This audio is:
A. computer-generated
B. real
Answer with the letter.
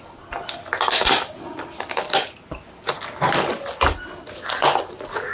B